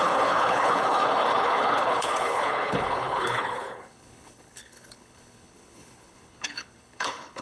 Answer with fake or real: fake